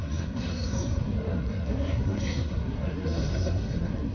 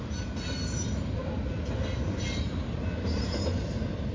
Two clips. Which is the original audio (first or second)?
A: second